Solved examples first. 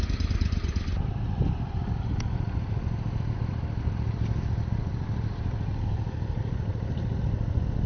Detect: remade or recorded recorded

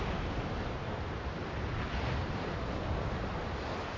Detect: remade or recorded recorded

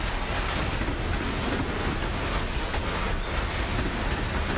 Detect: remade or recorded recorded